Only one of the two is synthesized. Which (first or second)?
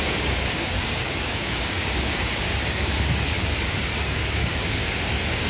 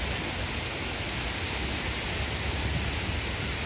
first